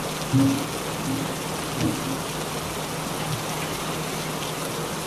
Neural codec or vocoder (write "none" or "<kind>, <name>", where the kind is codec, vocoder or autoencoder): none